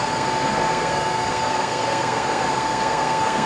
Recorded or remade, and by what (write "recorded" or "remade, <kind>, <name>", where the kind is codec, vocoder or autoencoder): remade, codec, SNAC